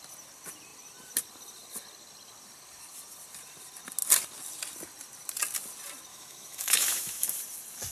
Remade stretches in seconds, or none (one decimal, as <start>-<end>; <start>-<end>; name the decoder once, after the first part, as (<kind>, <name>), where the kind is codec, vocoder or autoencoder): 6.1-7.3 (autoencoder, DAC-VAE)